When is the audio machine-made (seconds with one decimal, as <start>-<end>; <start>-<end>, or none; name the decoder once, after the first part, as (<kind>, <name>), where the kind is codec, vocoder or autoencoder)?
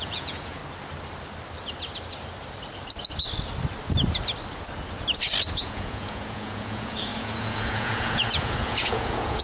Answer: 0.0-0.6 (vocoder, Vocos); 5.6-9.4